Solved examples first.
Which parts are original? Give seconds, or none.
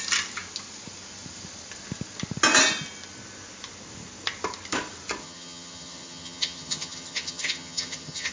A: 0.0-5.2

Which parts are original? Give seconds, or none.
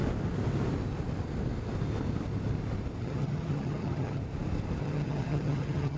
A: 0.0-3.0; 4.2-4.8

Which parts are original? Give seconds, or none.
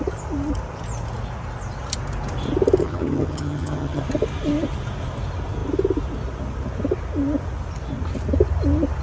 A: 0.0-2.8; 4.0-9.0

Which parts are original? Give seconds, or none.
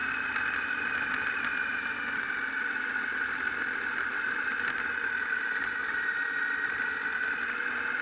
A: 0.0-8.0